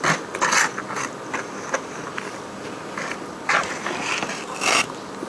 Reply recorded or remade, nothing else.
recorded